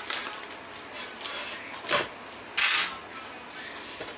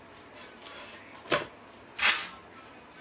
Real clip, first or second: first